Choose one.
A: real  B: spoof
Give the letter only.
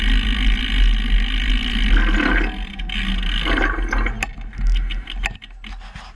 A